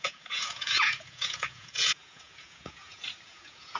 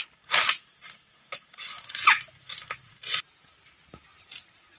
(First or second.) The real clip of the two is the second